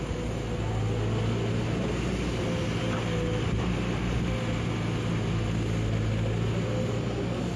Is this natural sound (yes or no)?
yes